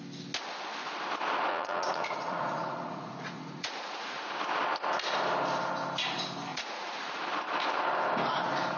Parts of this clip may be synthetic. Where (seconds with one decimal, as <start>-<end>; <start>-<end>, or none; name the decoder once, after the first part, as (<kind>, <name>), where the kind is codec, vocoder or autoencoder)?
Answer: 1.5-4.3 (vocoder, Vocos); 6.5-7.2